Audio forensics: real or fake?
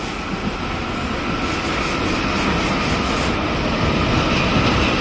fake